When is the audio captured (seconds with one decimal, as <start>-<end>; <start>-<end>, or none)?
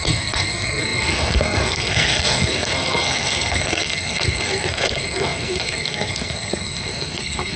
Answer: none